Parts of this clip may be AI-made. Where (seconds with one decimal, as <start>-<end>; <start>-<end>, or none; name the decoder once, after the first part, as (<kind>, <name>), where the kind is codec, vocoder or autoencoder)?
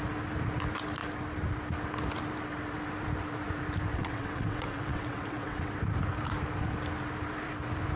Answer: 3.9-5.7 (vocoder, WaveNeXt)